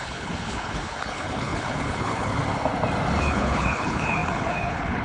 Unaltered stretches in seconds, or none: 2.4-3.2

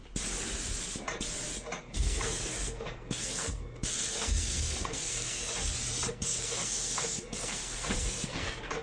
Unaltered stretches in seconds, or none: 0.0-1.8; 5.5-6.1

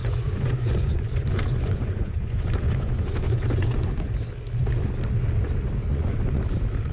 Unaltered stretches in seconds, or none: 4.1-5.9; 6.4-6.9